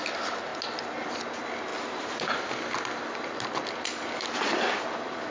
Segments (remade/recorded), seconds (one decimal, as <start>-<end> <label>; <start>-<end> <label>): 0.0-5.3 recorded